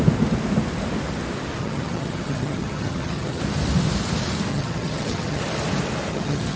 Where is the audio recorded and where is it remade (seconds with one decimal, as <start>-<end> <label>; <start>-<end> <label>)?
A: 0.0-1.6 recorded; 1.6-3.4 remade; 3.4-4.5 recorded; 4.5-5.4 remade; 5.4-6.1 recorded; 6.1-6.6 remade